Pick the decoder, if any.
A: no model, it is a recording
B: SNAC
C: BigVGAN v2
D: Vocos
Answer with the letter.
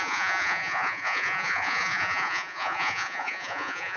D